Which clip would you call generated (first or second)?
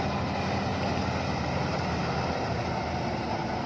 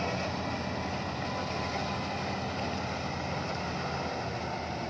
first